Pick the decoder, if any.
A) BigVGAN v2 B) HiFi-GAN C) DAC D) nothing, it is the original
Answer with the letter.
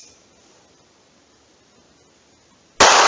D